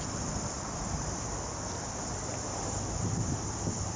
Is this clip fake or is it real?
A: fake